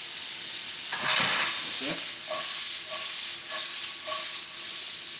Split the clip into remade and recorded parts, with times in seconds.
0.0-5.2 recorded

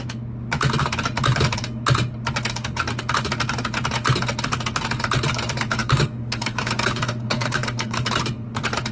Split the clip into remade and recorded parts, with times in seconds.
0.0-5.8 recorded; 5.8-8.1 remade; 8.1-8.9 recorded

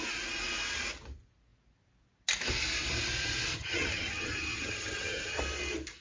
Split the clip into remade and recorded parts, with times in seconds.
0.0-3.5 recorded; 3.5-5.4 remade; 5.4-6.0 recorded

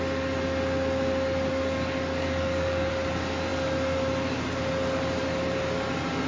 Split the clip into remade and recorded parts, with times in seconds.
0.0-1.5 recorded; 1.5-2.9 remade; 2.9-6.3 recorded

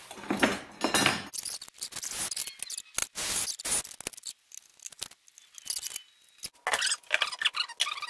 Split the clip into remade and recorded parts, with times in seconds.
0.0-8.1 recorded

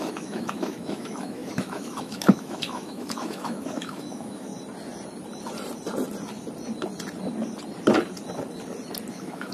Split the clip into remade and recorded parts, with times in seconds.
0.0-4.5 remade; 4.5-9.1 recorded; 9.1-9.5 remade

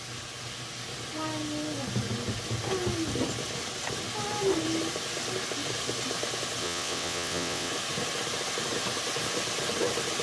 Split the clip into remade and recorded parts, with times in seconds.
0.0-6.6 recorded; 6.6-7.7 remade; 7.7-10.2 recorded